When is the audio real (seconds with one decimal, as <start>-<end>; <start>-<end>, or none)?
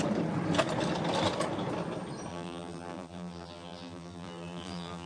0.0-2.3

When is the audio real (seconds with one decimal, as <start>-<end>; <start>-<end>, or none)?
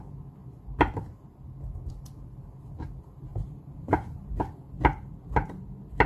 0.0-3.3; 4.4-6.1